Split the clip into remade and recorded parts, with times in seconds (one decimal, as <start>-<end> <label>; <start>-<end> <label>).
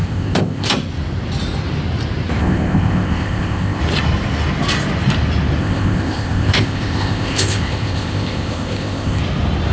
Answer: 0.0-0.7 remade; 0.7-2.4 recorded; 2.4-3.8 remade; 3.8-5.6 recorded; 5.6-9.2 remade; 9.2-9.7 recorded